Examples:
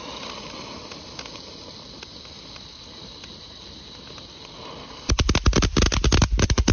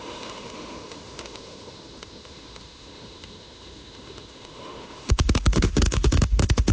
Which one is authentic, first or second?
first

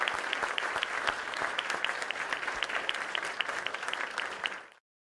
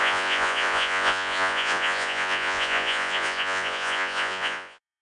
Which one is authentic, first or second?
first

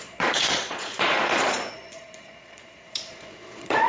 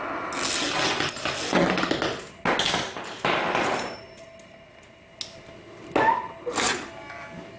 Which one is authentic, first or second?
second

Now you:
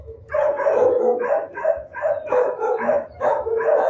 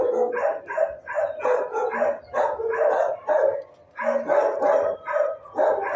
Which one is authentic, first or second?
second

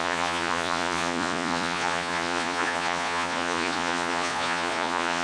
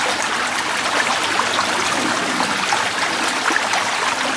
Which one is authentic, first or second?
second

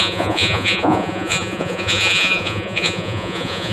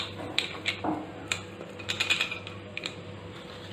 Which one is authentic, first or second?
second